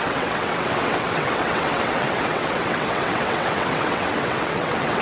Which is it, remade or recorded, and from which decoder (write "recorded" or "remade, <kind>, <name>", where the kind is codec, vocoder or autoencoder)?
remade, vocoder, WaveNeXt